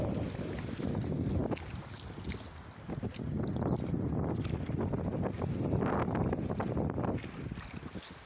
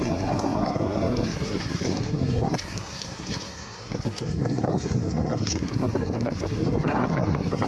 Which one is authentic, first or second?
first